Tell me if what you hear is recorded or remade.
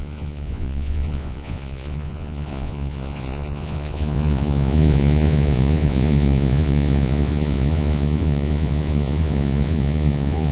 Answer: remade